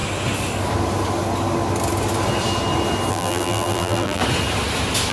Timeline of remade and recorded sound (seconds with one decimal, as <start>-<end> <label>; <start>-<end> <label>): 0.0-3.1 recorded; 3.1-4.2 remade; 4.2-5.1 recorded